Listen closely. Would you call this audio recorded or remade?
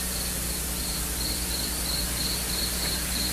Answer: recorded